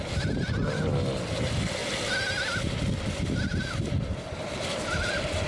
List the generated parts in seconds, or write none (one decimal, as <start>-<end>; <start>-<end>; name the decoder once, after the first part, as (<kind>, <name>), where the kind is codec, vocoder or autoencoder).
none